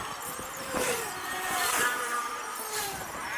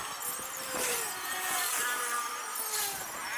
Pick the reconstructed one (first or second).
first